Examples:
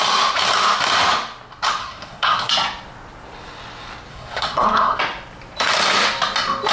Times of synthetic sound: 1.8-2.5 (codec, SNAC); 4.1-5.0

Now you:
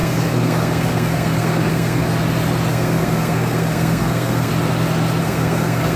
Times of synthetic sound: 0.0-2.1 (codec, SNAC); 2.7-4.5; 5.2-6.0

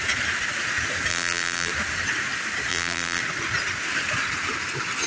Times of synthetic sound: 1.1-1.7 (vocoder, BigVGAN v2); 2.7-3.2